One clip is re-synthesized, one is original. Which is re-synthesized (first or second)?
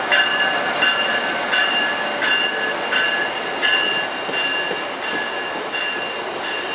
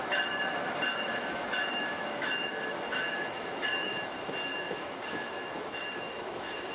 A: second